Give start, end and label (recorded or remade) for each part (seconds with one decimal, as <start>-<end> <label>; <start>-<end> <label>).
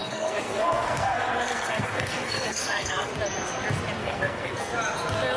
0.0-3.1 remade; 3.1-4.0 recorded; 4.0-4.7 remade; 4.7-5.4 recorded